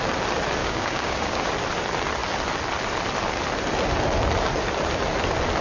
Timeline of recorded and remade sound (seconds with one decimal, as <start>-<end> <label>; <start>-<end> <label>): 0.0-0.6 recorded; 0.6-1.5 remade; 1.5-5.6 recorded